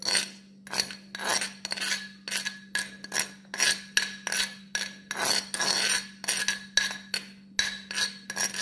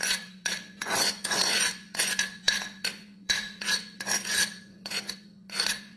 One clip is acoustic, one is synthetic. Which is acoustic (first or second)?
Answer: first